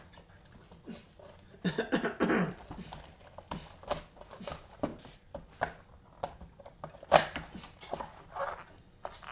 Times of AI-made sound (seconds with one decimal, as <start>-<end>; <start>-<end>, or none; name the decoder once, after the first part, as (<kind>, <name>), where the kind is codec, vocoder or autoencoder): 4.9-5.5 (vocoder, BigVGAN v2)